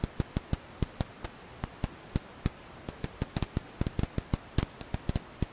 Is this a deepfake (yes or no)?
no